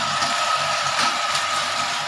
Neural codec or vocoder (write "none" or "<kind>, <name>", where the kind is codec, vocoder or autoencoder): vocoder, BigVGAN v2